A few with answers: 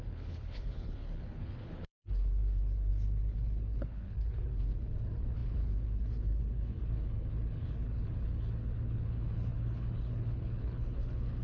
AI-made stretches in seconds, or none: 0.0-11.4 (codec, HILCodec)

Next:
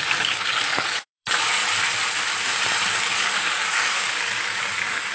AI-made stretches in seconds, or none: 0.0-1.6 (codec, DAC); 3.0-5.1

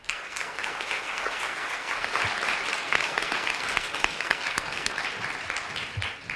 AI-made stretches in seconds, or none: 0.0-2.2 (codec, SNAC); 2.7-5.0

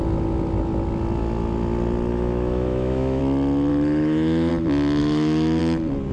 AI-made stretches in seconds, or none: 2.1-3.2 (autoencoder, DAC-VAE); 3.7-4.5; 5.0-5.6

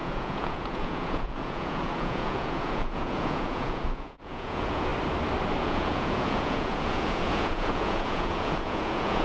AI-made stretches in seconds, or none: 0.0-4.9 (vocoder, Vocos); 5.6-9.2